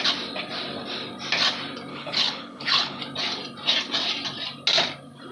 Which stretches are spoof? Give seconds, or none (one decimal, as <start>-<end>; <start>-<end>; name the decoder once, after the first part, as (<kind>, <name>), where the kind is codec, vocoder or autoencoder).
1.9-3.0 (codec, HILCodec)